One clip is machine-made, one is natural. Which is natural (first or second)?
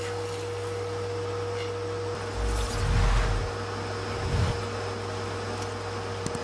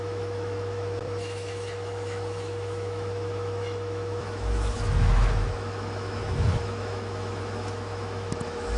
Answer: first